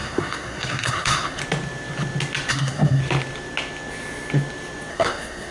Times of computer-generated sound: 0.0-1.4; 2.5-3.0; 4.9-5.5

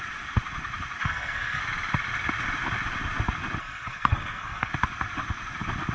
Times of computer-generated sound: 1.0-1.6; 3.6-4.7

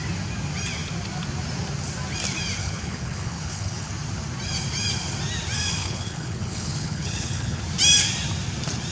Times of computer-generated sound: 2.6-3.9; 5.8-7.6

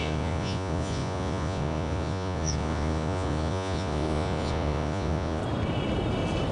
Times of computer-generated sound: 0.0-5.4

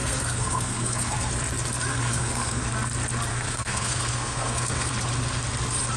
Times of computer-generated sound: 0.0-1.3; 1.9-2.7; 3.3-4.9

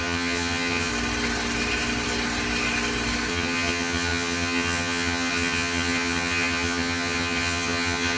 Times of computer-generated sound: 0.0-0.9; 3.3-8.2